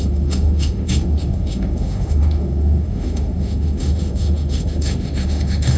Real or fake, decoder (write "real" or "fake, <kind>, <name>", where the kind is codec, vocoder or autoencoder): fake, autoencoder, DAC-VAE